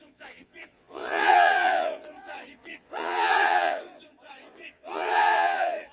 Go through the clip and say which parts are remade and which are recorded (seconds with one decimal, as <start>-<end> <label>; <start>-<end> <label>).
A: 0.0-5.9 remade